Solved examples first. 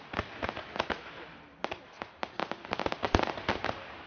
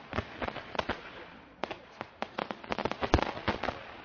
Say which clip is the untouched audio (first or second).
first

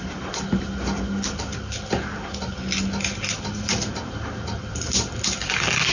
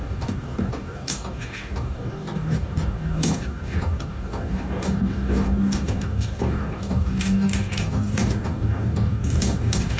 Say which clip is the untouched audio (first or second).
first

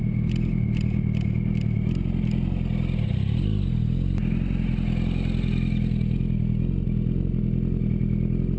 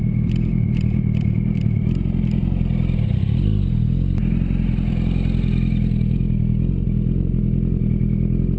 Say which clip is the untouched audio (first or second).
first